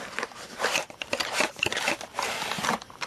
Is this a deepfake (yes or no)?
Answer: yes